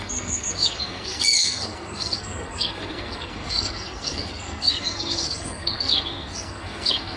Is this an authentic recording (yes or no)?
no